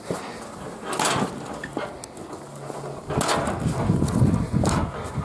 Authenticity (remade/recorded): recorded